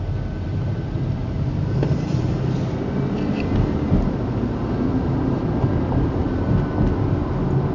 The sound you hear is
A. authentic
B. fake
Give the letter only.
A